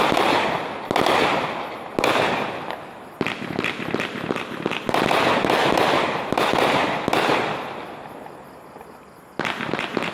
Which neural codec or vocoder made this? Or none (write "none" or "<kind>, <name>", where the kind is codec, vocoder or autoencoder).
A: none